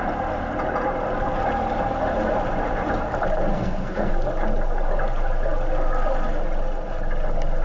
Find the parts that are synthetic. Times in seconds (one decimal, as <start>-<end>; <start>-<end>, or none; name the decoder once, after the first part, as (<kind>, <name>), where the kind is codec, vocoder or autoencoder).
3.5-4.1 (codec, SNAC)